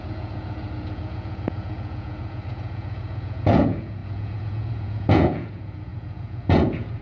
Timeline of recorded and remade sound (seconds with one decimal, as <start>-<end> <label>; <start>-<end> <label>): 0.0-7.0 remade